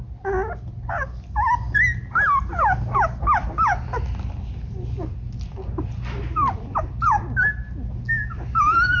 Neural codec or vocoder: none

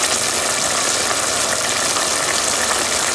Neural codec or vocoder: none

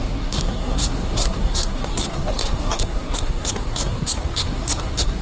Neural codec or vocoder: codec, SNAC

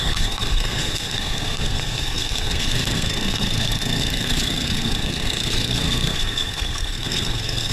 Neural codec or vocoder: codec, SNAC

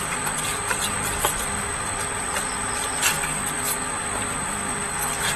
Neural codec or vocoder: none